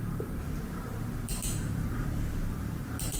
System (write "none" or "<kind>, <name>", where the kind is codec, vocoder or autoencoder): vocoder, BigVGAN v2